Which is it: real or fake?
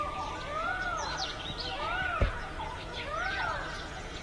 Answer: fake